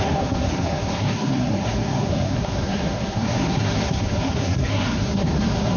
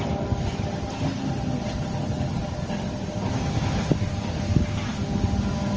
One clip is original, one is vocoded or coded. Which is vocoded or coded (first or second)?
first